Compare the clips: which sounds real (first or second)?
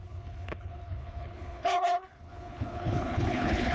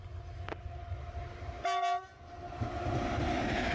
second